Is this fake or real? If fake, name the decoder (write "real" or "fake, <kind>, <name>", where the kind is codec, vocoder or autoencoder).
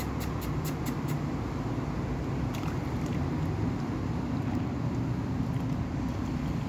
real